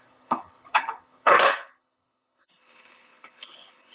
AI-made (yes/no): yes